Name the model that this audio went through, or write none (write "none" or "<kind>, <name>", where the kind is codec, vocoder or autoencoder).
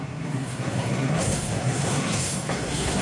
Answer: codec, SNAC